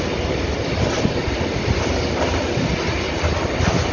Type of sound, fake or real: real